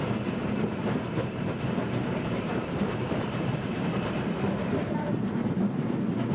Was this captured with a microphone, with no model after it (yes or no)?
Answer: no